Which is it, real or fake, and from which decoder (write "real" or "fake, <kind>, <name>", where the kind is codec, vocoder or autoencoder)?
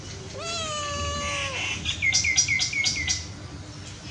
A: real